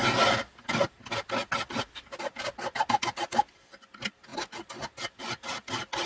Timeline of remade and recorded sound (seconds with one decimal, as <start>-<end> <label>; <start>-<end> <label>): 0.0-6.1 recorded